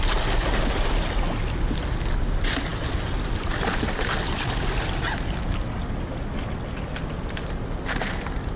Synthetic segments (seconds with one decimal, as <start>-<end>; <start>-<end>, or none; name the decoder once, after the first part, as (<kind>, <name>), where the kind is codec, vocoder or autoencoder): none